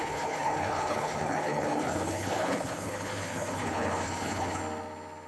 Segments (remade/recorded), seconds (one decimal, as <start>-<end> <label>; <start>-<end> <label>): 0.0-4.6 remade; 4.6-5.3 recorded